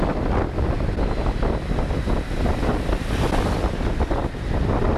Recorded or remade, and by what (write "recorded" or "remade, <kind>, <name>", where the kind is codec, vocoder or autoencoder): recorded